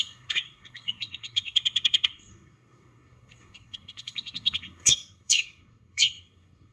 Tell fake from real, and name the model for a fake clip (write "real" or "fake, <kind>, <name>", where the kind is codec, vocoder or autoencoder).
fake, codec, SNAC